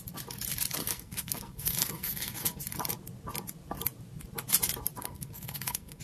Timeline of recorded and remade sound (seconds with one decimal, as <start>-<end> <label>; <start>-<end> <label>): 0.0-0.8 recorded; 0.8-2.6 remade; 2.6-5.0 recorded; 5.0-6.0 remade